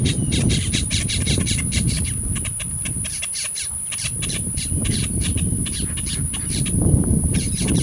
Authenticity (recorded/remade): remade